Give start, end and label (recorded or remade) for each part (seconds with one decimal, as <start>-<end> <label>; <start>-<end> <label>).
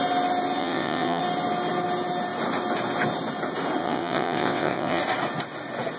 0.0-0.6 recorded; 0.6-1.2 remade; 1.2-3.8 recorded; 3.8-5.0 remade; 5.0-6.0 recorded